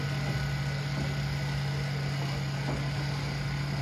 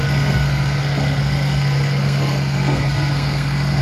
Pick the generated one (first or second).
second